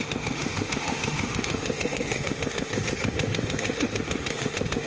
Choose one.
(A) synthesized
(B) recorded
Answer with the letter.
A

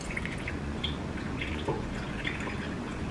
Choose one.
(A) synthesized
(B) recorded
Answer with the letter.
A